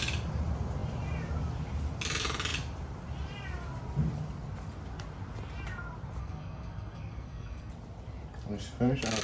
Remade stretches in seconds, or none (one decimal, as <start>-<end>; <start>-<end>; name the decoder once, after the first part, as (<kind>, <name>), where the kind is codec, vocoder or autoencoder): 6.2-7.7 (codec, SNAC)